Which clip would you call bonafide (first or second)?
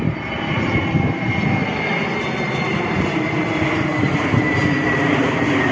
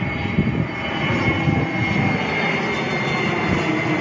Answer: second